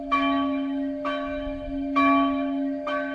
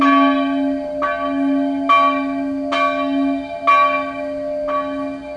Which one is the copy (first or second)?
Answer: first